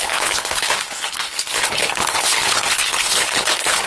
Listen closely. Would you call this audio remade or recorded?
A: remade